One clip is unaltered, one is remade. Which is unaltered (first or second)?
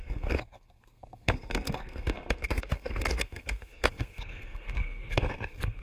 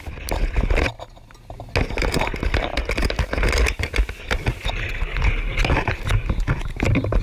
second